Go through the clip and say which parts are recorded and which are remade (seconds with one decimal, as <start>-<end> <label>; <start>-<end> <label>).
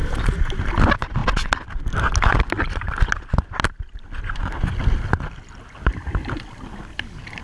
0.0-7.4 recorded